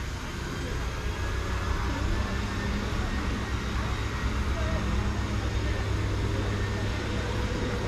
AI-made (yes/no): no